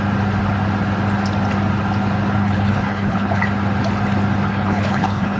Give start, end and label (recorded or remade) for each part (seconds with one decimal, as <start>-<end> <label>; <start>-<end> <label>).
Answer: 0.0-2.4 recorded; 2.4-3.4 remade; 3.4-4.5 recorded; 4.5-5.4 remade